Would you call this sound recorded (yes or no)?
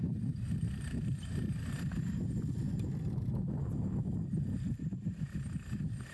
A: yes